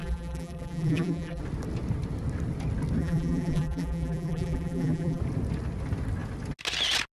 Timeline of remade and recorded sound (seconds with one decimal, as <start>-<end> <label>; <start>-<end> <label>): 0.0-1.4 remade; 1.4-3.0 recorded; 3.0-5.2 remade; 5.2-7.2 recorded